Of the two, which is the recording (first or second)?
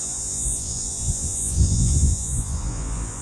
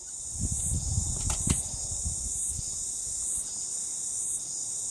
second